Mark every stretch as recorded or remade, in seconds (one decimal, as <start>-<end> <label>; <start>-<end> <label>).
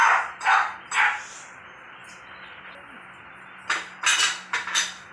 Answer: 0.0-5.1 recorded